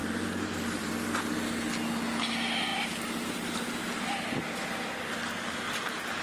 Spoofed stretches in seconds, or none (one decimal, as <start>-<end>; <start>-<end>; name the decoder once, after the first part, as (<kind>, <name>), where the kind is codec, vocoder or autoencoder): 0.0-1.2 (vocoder, BigVGAN v2); 2.7-5.8